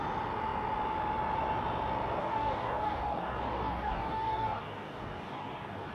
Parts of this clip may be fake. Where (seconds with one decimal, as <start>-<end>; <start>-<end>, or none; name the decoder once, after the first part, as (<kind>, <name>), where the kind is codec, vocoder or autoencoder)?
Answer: 2.2-5.9 (codec, DAC)